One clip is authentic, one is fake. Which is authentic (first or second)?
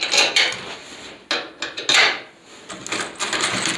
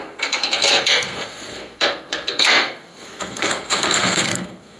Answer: first